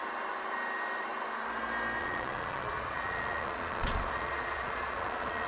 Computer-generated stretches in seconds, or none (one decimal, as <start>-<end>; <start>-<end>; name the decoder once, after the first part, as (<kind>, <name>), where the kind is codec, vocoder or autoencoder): 2.0-5.5 (vocoder, Vocos)